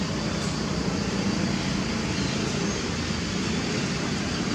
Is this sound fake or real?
real